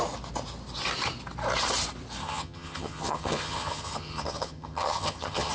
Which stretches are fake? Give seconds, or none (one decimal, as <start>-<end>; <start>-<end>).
2.2-5.5